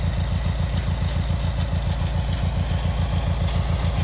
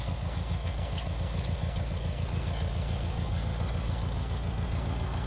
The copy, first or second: second